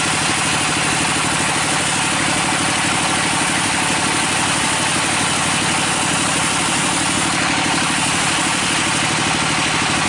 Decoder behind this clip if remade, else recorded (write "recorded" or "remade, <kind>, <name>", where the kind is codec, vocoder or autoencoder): recorded